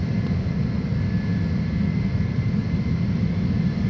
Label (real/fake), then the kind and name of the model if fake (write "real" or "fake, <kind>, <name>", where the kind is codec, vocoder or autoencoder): real